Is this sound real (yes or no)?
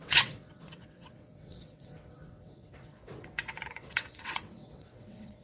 no